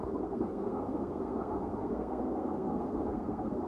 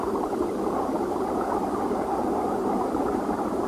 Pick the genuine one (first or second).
second